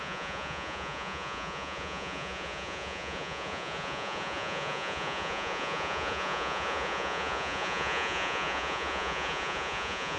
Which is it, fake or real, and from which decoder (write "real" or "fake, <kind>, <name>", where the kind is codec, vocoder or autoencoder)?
fake, vocoder, Vocos